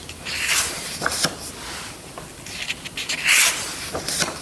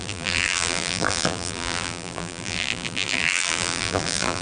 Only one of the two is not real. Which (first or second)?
second